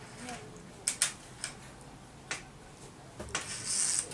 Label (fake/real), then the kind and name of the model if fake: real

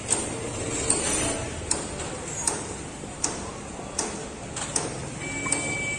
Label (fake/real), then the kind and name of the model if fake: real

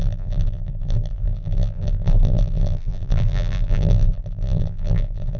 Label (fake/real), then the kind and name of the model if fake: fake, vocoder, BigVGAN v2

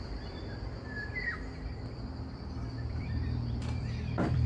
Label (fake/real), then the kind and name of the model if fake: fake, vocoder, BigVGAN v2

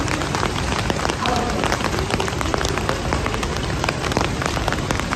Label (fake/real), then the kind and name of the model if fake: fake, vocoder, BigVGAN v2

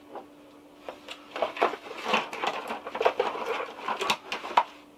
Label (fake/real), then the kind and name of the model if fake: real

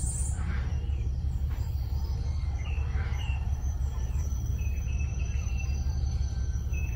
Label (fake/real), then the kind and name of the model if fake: fake, vocoder, BigVGAN v2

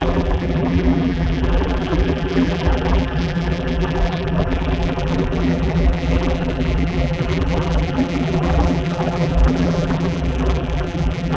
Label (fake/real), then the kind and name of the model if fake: fake, vocoder, BigVGAN v2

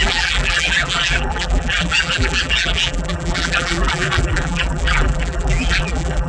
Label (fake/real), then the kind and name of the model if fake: fake, vocoder, BigVGAN v2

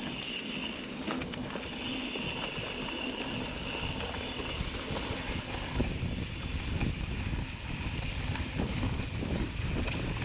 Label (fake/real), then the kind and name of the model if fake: real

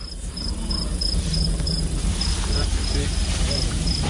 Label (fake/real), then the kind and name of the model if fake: fake, vocoder, BigVGAN v2